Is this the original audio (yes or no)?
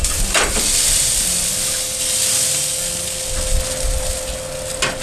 yes